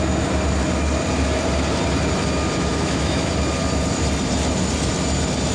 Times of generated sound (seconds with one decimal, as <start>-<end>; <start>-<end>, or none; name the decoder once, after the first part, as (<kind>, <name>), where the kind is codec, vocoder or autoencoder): 2.7-3.3 (autoencoder, DAC-VAE)